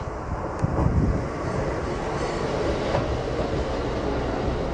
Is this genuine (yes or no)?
yes